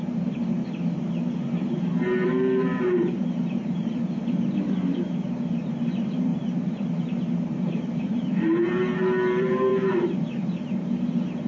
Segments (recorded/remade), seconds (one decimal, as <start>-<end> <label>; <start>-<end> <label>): 0.0-0.6 remade; 0.6-1.4 recorded; 1.4-11.5 remade